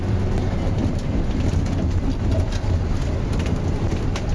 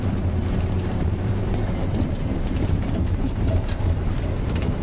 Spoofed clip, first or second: second